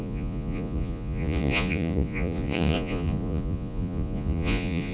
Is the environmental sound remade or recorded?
remade